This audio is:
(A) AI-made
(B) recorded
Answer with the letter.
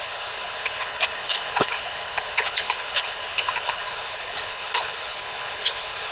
A